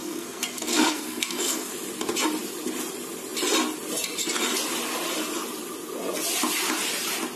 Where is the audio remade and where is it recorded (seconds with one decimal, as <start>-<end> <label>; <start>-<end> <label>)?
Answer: 0.0-1.7 remade; 1.7-7.4 recorded

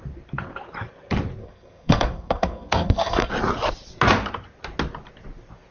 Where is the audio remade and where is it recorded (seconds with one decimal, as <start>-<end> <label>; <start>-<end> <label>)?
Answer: 0.0-1.4 recorded; 1.4-3.3 remade; 3.3-5.7 recorded

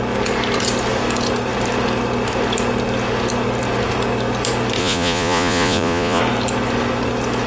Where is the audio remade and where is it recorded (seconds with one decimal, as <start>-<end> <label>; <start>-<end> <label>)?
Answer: 0.0-4.8 recorded; 4.8-6.2 remade; 6.2-7.5 recorded

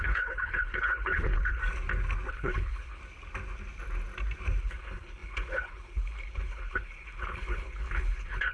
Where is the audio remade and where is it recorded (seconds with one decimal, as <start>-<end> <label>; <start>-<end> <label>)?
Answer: 0.0-1.6 remade; 1.6-2.3 recorded; 2.3-3.0 remade; 3.0-4.6 recorded; 4.6-8.5 remade

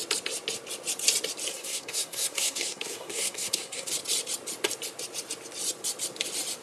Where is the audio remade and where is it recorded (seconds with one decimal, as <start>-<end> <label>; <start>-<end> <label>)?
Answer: 0.0-1.5 recorded; 1.5-3.9 remade; 3.9-6.6 recorded

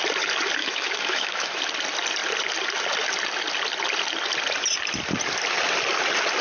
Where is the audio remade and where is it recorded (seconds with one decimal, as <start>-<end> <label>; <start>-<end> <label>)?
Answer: 0.0-0.6 recorded; 0.6-1.6 remade; 1.6-6.4 recorded

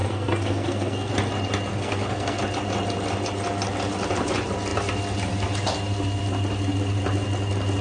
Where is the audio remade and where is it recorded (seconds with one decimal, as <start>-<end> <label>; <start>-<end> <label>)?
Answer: 0.0-1.1 remade; 1.1-1.7 recorded; 1.7-2.4 remade; 2.4-7.8 recorded

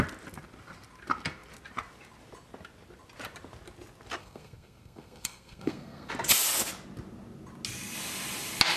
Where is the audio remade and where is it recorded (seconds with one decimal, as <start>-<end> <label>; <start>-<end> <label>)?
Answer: 0.0-4.2 recorded; 4.2-6.1 remade; 6.1-8.8 recorded